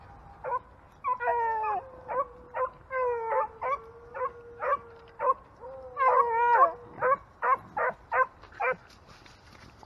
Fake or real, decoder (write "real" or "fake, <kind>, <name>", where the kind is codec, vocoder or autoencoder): real